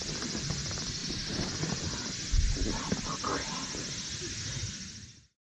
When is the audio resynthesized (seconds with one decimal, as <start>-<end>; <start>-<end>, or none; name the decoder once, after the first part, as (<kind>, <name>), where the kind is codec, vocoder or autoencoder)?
none